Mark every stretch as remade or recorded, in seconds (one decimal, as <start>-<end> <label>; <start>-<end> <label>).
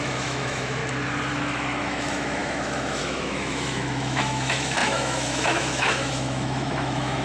0.0-0.8 remade; 0.8-1.3 recorded; 1.3-7.2 remade